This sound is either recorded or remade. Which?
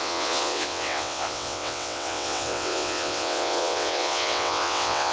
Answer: remade